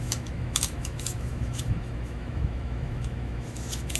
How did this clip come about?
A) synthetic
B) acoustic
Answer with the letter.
A